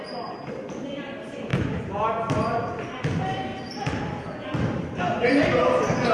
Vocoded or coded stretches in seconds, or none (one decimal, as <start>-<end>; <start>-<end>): 1.5-2.1; 3.5-5.0